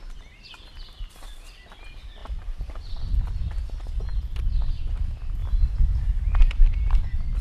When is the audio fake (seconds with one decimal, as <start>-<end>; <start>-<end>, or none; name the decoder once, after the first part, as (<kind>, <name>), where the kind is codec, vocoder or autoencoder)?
2.2-3.2 (vocoder, BigVGAN v2); 4.1-4.8